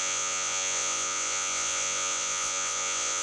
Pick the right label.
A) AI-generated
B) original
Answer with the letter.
A